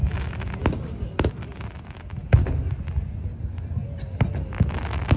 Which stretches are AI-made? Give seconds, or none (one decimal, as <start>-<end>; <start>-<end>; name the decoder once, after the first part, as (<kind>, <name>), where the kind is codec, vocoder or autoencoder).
none